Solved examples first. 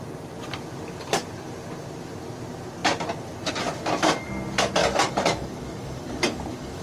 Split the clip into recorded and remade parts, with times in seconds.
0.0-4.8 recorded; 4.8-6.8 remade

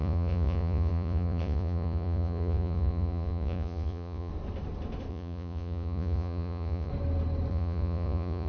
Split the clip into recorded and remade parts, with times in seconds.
0.0-4.3 remade; 4.3-5.1 recorded; 5.1-6.9 remade; 6.9-7.5 recorded; 7.5-8.5 remade

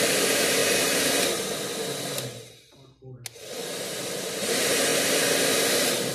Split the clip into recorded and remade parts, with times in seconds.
0.0-0.6 remade; 0.6-4.3 recorded; 4.3-4.9 remade; 4.9-6.1 recorded

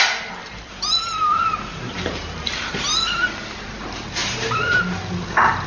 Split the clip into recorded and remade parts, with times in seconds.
0.0-0.4 recorded; 0.4-2.7 remade; 2.7-4.2 recorded; 4.2-4.8 remade; 4.8-5.7 recorded

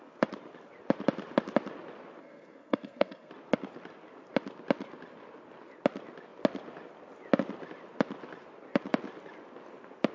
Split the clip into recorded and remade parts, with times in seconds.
0.0-2.2 recorded; 2.2-3.3 remade; 3.3-10.1 recorded

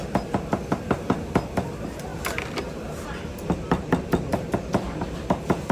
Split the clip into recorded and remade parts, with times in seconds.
0.0-5.7 recorded